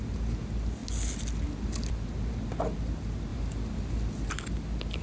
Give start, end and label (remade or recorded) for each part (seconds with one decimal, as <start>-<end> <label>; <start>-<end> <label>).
0.0-5.0 recorded